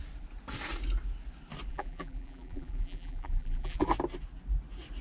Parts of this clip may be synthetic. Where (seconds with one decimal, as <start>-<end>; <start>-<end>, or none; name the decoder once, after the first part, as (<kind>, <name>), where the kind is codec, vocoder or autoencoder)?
1.7-3.9 (vocoder, BigVGAN v2)